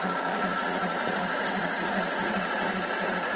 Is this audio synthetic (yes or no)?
yes